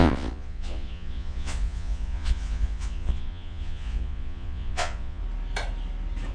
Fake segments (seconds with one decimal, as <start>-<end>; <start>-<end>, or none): 0.0-5.2